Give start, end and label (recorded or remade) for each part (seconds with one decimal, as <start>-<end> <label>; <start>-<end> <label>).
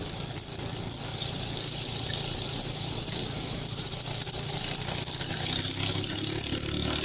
0.0-1.1 recorded; 1.1-4.6 remade; 4.6-7.0 recorded